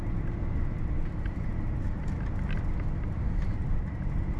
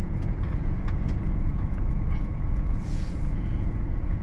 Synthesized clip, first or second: second